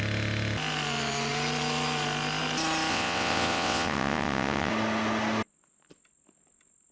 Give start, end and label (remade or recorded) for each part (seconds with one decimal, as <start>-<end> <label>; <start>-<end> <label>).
0.0-2.9 recorded; 2.9-4.7 remade; 4.7-6.9 recorded